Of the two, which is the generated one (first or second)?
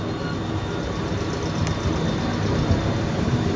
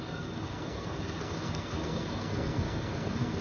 second